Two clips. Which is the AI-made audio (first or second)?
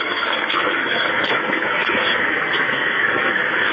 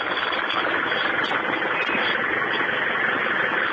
first